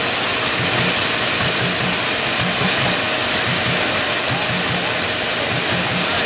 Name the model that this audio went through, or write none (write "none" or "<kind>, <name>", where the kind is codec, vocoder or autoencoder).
none